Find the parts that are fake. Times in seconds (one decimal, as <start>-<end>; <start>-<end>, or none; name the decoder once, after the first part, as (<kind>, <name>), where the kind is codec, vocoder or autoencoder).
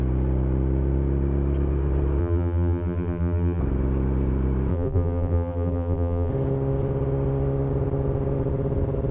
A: 2.2-3.6 (vocoder, BigVGAN v2); 4.7-6.3